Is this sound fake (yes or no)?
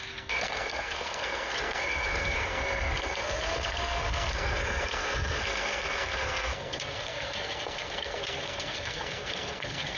yes